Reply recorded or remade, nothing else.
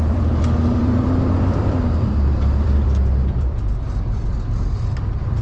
remade